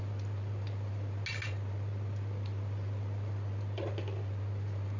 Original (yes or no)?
yes